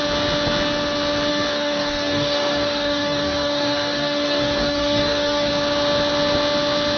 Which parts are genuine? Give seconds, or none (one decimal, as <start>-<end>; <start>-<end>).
0.0-1.3; 5.5-7.0